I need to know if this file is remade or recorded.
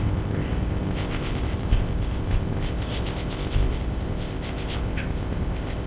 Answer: remade